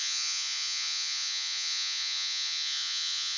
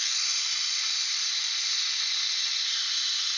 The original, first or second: second